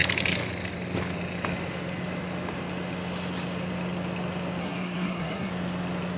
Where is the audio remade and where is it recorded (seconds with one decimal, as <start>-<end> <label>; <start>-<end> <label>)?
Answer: 0.0-4.6 recorded; 4.6-5.5 remade; 5.5-6.2 recorded

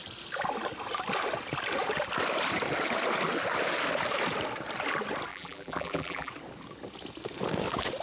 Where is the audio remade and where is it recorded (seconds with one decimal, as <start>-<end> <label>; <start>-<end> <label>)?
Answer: 0.0-5.3 recorded; 5.3-6.3 remade; 6.3-8.0 recorded

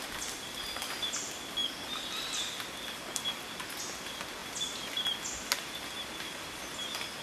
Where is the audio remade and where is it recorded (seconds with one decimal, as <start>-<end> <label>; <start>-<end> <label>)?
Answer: 0.0-7.2 recorded

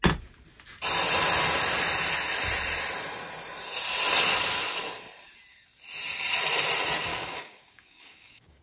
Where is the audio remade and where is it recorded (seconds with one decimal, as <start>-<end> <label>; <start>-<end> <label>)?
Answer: 0.0-7.1 recorded; 7.1-8.6 remade